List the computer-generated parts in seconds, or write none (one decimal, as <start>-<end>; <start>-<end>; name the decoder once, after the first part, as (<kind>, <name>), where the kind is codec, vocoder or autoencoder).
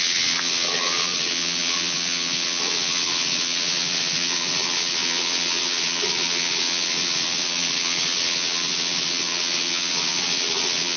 0.0-11.0 (vocoder, Vocos)